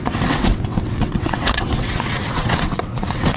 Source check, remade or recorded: remade